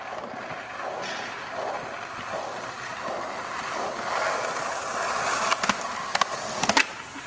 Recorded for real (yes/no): yes